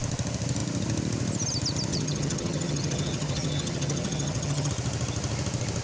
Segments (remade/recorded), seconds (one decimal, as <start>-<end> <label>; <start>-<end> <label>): 0.0-1.9 recorded; 1.9-4.7 remade; 4.7-5.8 recorded